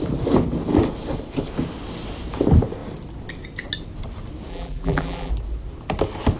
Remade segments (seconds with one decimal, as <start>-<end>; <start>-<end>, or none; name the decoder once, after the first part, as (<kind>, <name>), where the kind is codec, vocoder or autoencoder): 4.5-5.3 (vocoder, BigVGAN v2)